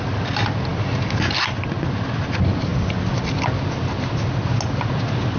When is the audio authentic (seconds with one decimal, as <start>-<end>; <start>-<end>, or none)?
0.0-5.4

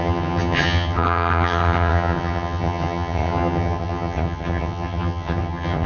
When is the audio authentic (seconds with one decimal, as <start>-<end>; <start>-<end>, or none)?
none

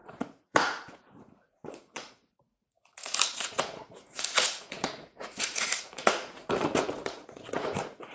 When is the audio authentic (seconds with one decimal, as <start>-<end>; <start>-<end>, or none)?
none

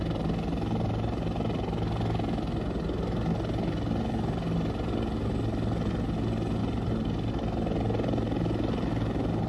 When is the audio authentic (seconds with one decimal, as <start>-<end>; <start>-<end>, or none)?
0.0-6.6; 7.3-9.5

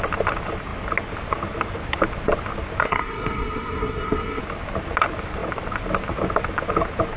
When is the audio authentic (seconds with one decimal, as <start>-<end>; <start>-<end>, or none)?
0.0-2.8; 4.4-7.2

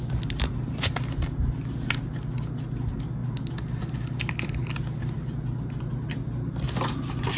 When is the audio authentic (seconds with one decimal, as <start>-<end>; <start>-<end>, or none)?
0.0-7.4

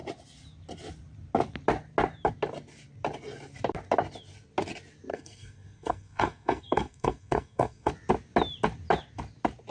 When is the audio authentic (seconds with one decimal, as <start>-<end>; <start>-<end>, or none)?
0.0-5.1; 7.9-9.7

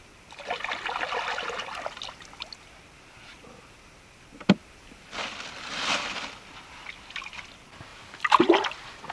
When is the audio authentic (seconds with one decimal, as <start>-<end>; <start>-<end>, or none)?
0.0-9.1